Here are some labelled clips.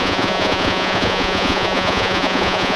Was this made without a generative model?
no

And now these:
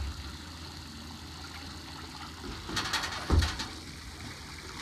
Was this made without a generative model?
yes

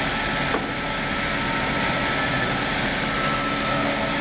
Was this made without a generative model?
yes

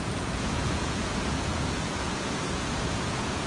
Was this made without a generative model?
no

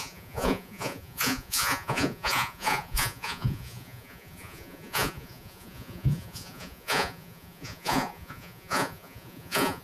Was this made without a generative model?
no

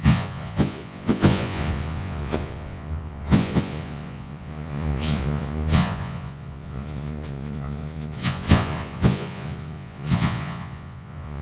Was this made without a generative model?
no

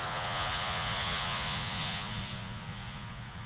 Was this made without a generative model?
no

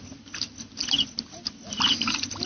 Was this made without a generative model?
yes